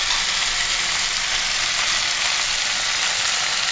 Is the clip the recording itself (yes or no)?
yes